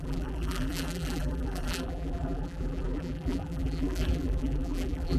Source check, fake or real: fake